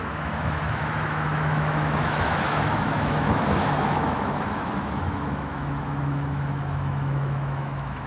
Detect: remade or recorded remade